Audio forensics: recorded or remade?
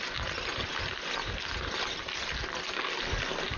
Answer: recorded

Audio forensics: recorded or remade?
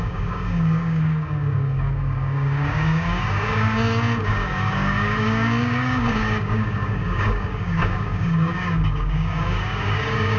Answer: remade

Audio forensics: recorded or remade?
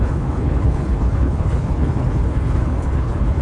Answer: remade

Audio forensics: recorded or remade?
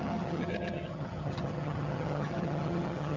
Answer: remade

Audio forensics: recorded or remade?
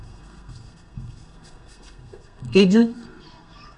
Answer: remade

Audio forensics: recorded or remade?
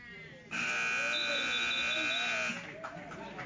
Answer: recorded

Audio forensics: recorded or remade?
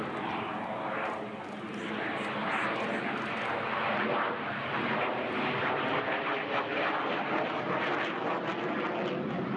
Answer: recorded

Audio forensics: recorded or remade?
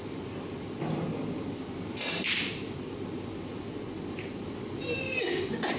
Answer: recorded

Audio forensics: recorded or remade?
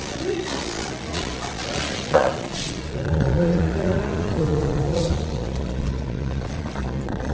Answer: remade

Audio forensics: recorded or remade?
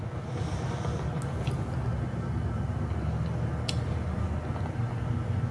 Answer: recorded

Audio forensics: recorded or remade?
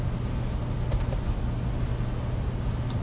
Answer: recorded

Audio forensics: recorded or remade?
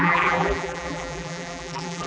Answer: remade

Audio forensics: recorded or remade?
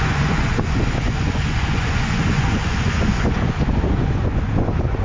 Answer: remade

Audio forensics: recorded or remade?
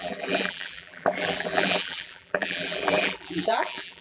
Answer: remade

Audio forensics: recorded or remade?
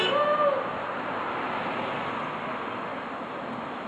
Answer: recorded